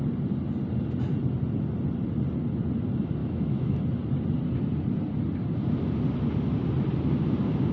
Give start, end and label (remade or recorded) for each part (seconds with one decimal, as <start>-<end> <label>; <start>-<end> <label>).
0.0-3.2 recorded; 3.2-3.8 remade; 3.8-7.7 recorded

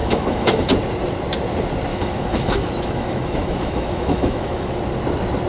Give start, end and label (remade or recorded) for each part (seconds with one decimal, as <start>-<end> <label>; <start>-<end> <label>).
0.0-0.6 remade; 0.6-1.9 recorded; 1.9-4.8 remade; 4.8-5.5 recorded